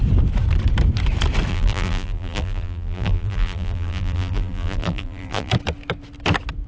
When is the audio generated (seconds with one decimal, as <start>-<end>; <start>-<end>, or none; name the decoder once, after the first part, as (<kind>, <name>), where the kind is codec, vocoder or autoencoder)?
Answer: 1.5-5.5 (vocoder, BigVGAN v2)